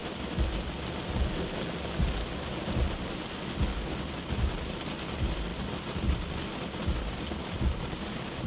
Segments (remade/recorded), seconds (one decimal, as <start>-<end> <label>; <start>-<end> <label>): 0.0-8.5 recorded